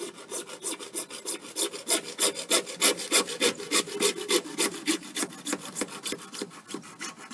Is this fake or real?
real